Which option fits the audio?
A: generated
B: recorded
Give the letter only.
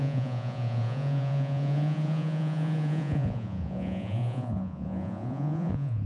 A